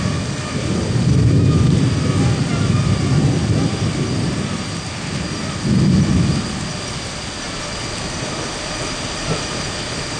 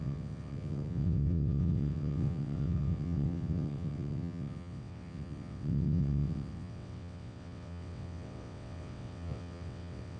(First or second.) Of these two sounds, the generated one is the second